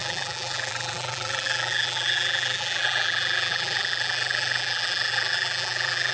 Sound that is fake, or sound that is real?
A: fake